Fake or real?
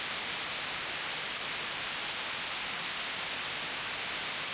real